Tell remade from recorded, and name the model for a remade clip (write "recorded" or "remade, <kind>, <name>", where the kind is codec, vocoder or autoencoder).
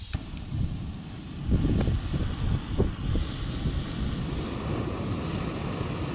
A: recorded